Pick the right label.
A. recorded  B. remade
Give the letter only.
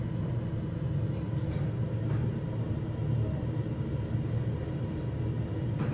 A